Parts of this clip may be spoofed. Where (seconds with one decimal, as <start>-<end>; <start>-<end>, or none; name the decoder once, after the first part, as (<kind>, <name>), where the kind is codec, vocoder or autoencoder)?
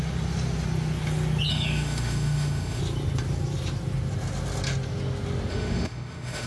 1.5-2.8 (autoencoder, DAC-VAE); 5.5-6.5